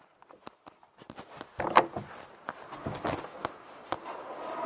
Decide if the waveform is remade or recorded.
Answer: recorded